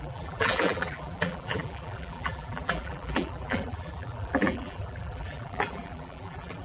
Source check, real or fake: fake